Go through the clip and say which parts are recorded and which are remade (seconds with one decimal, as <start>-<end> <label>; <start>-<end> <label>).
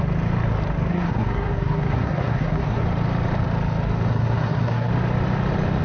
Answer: 0.0-0.9 recorded; 0.9-2.8 remade; 2.8-4.1 recorded; 4.1-4.9 remade; 4.9-5.8 recorded